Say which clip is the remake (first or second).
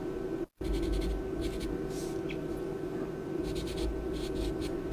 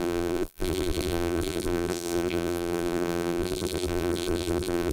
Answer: second